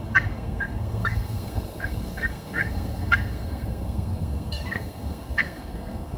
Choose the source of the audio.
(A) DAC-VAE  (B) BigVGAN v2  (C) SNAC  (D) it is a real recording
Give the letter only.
C